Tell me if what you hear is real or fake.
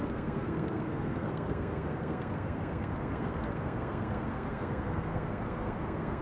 fake